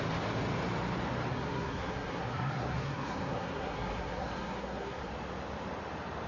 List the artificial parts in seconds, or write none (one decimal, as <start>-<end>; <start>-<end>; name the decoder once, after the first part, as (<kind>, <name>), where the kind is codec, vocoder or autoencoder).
1.3-5.1 (codec, SNAC)

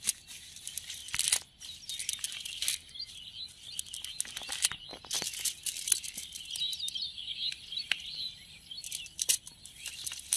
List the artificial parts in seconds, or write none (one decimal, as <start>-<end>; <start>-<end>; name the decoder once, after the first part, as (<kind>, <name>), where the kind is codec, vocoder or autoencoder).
none

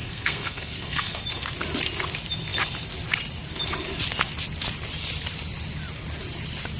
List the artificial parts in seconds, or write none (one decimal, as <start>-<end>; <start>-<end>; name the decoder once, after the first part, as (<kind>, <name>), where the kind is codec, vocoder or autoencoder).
0.0-1.2 (codec, SNAC)

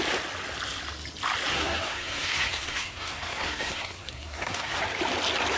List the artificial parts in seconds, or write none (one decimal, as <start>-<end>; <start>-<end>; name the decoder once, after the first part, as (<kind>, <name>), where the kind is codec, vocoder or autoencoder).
1.5-4.8 (codec, SNAC)